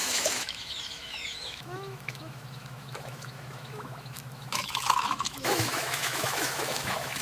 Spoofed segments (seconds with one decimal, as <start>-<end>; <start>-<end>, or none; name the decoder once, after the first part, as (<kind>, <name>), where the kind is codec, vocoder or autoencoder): 0.0-7.2 (autoencoder, DAC-VAE)